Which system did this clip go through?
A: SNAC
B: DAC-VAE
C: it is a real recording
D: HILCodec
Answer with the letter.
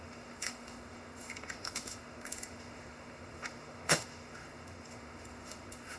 B